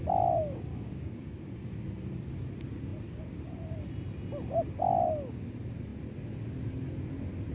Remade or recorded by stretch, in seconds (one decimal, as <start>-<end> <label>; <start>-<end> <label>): 0.0-0.7 recorded; 0.7-1.5 remade; 1.5-7.5 recorded